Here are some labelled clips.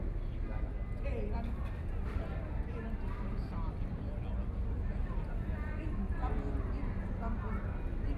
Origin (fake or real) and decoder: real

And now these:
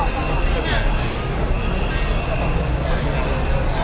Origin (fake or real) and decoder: real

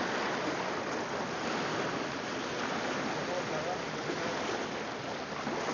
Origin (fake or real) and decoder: real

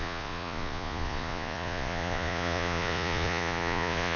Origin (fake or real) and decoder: fake, vocoder, Vocos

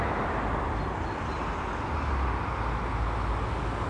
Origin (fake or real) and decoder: real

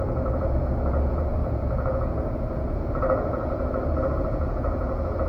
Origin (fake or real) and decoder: fake, vocoder, Vocos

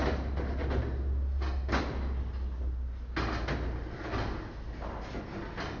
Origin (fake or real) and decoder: real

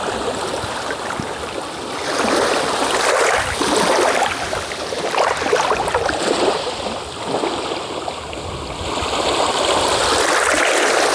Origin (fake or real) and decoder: real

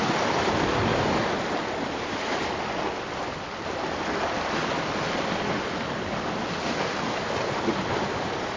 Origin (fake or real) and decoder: real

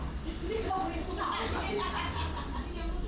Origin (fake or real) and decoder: real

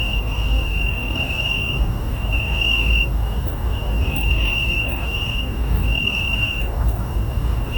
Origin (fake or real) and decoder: fake, codec, DAC